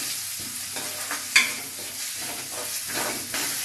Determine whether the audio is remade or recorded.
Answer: recorded